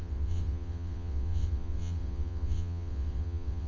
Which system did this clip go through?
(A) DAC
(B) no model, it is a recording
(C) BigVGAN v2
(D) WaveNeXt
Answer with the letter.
D